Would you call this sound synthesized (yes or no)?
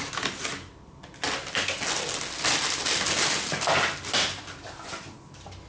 no